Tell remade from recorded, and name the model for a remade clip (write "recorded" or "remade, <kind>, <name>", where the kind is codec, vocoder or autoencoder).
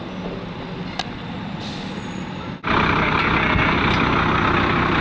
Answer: recorded